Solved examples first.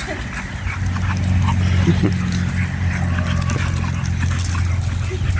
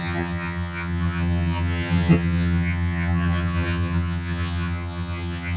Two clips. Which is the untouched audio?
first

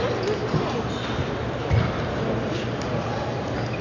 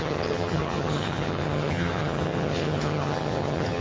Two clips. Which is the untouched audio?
first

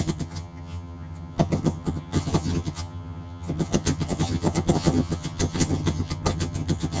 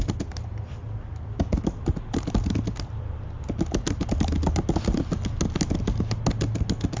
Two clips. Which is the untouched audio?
second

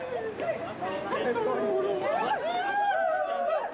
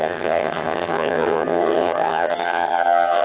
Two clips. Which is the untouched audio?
first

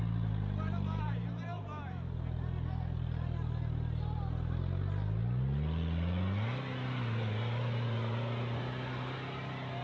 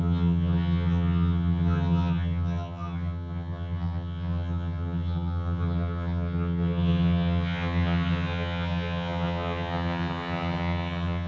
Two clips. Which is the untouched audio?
first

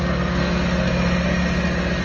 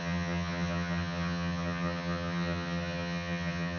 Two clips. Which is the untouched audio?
first